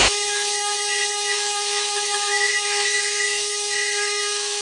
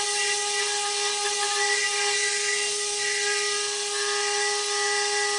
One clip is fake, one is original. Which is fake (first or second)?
first